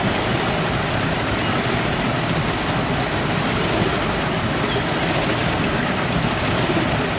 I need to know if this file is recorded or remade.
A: recorded